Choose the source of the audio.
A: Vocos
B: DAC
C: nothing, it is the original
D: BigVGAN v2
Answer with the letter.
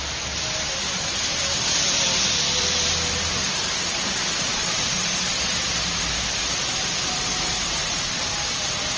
D